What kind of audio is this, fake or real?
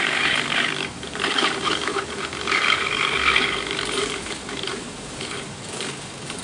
fake